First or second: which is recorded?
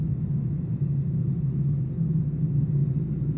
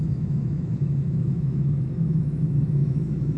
first